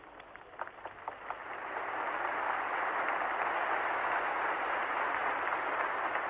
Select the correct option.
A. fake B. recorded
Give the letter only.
B